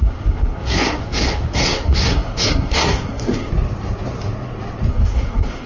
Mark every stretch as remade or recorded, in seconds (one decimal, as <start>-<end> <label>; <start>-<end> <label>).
0.0-3.5 remade; 3.5-4.9 recorded; 4.9-5.7 remade